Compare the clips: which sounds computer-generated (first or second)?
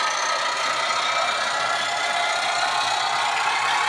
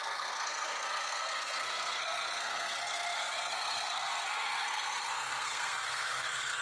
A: second